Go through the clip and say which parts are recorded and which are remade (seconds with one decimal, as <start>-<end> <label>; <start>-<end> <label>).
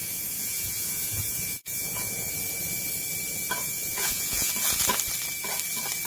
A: 0.0-2.3 remade; 2.3-3.6 recorded; 3.6-4.5 remade; 4.5-6.1 recorded